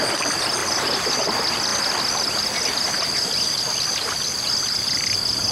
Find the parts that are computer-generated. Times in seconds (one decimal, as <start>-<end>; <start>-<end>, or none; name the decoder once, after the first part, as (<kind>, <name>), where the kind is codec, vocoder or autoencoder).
none